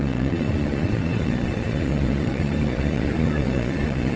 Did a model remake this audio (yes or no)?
yes